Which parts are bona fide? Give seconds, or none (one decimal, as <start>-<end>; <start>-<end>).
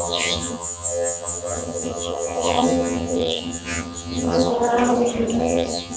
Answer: 4.5-5.4